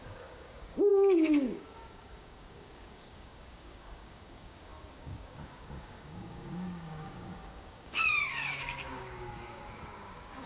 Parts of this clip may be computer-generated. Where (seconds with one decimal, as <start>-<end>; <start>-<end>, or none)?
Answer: 0.0-10.5